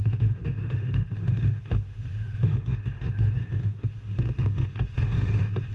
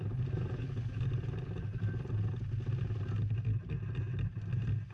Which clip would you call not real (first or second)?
first